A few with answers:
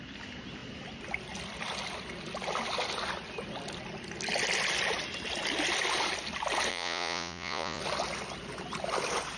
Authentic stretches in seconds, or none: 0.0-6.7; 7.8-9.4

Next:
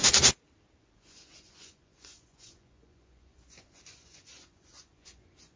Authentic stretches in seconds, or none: 0.0-0.8

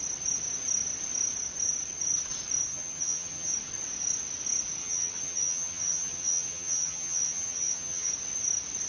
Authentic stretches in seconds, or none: 0.0-2.7; 3.5-4.8; 8.1-8.9

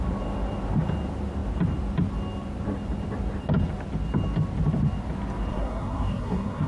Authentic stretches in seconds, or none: 0.0-5.5

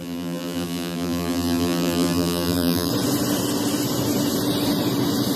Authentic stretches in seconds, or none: 2.9-5.4

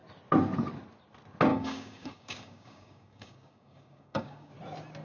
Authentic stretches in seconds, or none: 0.0-1.5; 4.5-5.0

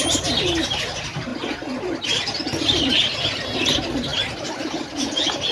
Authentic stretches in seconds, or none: none

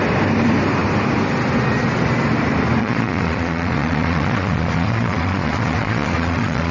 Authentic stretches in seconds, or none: 0.0-2.8